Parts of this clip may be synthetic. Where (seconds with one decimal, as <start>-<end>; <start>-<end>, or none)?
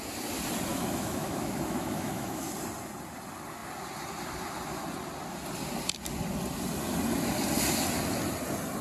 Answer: 0.7-2.5